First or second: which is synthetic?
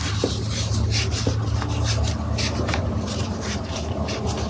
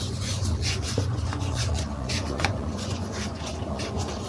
second